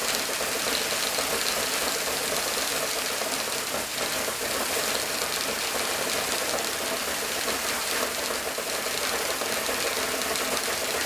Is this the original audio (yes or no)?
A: yes